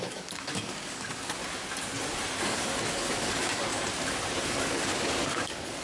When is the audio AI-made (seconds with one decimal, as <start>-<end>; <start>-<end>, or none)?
0.0-1.4; 2.4-3.7; 4.4-5.8